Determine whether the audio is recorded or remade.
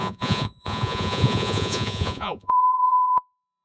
remade